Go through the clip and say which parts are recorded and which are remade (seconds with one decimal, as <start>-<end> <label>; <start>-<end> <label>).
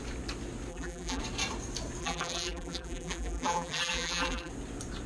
0.0-0.7 recorded; 0.7-1.2 remade; 1.2-2.0 recorded; 2.0-4.5 remade; 4.5-5.1 recorded